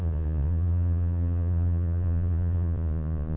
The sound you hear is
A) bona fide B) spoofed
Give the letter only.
B